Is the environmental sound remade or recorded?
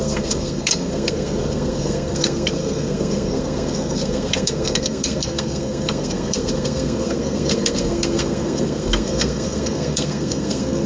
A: remade